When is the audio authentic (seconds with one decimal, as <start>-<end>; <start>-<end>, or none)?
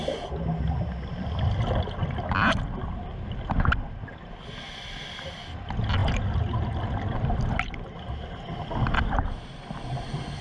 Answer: 0.0-10.4